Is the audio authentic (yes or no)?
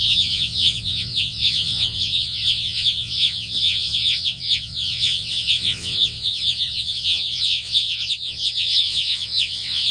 no